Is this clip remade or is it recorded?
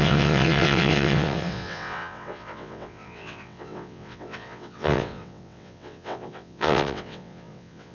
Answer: remade